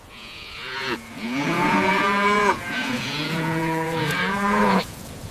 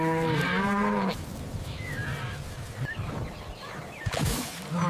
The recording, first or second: second